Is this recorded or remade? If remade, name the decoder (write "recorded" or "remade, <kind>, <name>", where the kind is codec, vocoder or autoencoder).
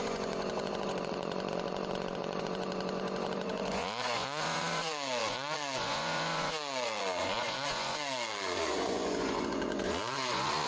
remade, vocoder, Vocos